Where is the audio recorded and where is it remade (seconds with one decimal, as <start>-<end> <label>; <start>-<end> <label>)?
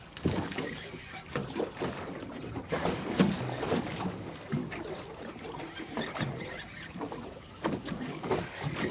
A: 0.0-1.4 remade; 1.4-2.7 recorded; 2.7-4.6 remade; 4.6-7.1 recorded; 7.1-8.9 remade